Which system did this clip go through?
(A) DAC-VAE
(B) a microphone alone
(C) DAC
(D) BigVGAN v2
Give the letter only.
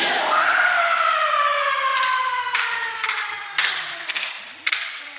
D